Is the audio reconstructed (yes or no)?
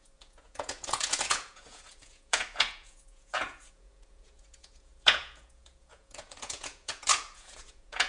yes